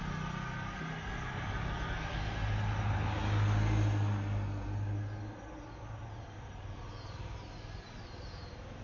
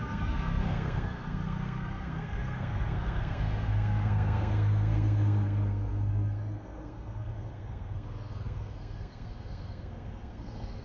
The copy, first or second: second